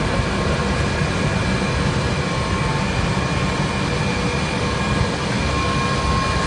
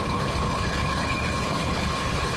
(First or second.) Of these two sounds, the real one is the first